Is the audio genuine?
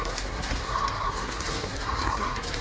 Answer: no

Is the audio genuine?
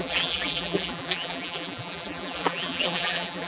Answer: no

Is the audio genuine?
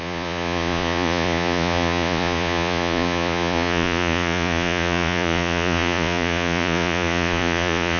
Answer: no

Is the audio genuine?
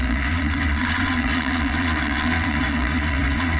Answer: no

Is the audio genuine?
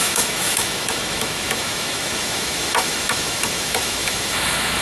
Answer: no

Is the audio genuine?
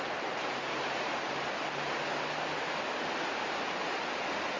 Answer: yes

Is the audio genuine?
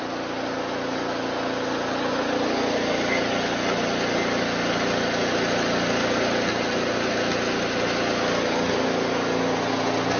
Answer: yes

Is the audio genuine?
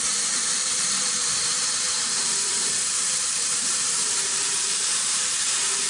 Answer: no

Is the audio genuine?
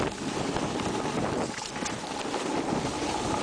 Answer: yes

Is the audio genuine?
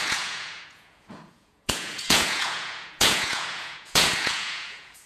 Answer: no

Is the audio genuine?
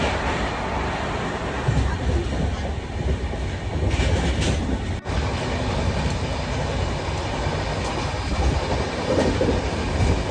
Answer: yes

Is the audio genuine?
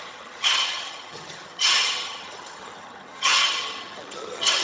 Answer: no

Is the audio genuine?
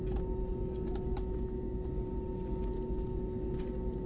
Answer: yes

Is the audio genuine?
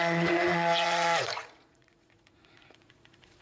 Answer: no